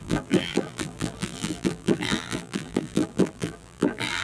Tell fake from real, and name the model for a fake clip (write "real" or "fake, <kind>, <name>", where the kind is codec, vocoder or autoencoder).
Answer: fake, vocoder, BigVGAN v2